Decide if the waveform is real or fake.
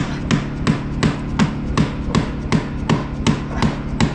real